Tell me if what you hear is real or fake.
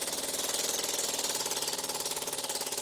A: real